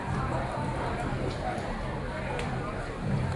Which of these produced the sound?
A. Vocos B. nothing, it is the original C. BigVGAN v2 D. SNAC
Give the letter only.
C